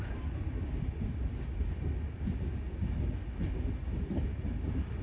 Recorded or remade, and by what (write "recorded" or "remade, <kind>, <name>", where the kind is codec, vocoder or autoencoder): recorded